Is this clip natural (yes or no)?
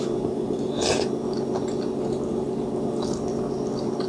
yes